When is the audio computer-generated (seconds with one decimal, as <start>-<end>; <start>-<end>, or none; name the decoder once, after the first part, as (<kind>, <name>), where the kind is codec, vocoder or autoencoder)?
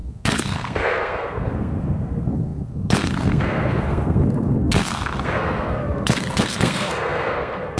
0.0-7.8 (codec, SNAC)